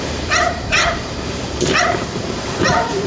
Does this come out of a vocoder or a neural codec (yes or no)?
yes